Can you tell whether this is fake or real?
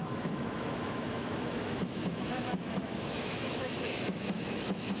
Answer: fake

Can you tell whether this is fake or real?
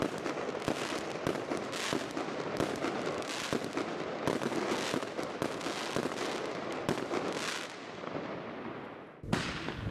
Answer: real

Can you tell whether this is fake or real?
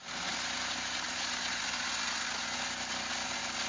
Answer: real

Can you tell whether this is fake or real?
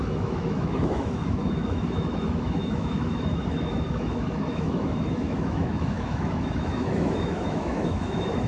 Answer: fake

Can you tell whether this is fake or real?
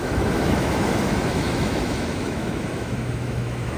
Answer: fake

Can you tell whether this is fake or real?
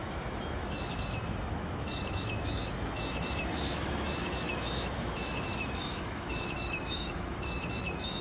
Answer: fake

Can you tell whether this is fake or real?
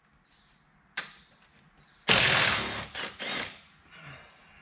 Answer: real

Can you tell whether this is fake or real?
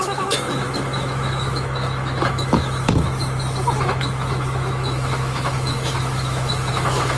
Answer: fake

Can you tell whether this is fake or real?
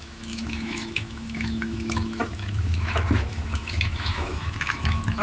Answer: fake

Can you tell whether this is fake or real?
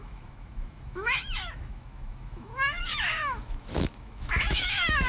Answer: fake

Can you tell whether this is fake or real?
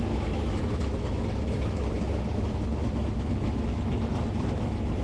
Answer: fake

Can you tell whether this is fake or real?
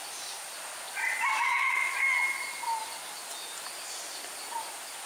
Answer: real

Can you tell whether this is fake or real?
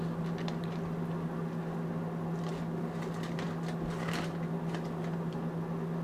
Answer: real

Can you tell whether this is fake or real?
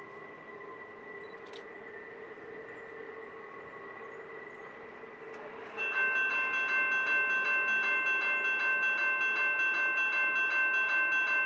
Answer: real